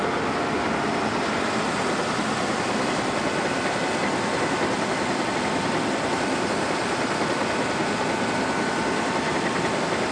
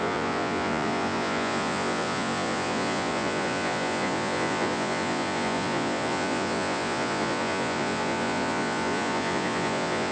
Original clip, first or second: first